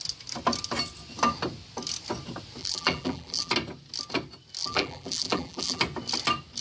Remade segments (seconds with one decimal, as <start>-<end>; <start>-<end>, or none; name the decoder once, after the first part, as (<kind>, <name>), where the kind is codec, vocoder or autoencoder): 2.6-3.5 (vocoder, BigVGAN v2); 4.6-5.8